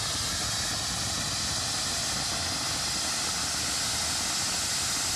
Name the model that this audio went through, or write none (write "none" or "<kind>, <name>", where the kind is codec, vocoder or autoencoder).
none